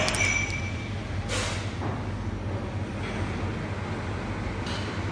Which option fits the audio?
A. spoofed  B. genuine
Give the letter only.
B